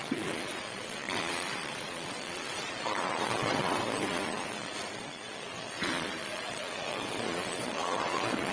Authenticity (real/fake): fake